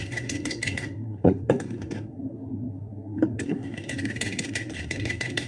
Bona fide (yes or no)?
no